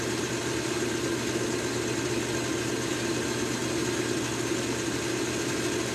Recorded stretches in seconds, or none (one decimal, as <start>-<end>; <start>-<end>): 0.0-5.9